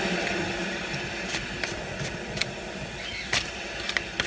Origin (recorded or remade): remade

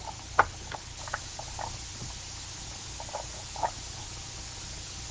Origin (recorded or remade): recorded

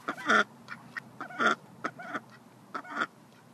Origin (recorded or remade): recorded